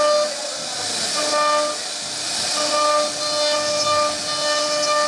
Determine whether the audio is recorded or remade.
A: recorded